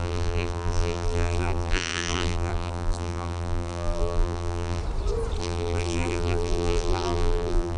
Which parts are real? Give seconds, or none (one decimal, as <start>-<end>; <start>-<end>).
4.8-5.4